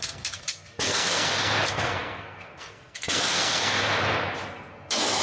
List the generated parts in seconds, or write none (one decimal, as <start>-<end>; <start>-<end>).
0.0-3.8; 4.5-5.2